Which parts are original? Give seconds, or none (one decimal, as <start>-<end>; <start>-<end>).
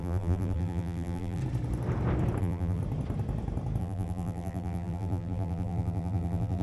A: 1.4-2.4; 2.8-3.8